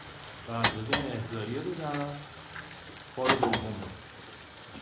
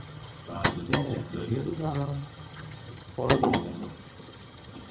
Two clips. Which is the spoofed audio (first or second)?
second